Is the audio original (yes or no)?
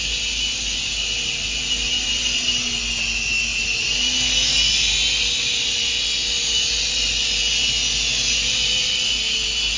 yes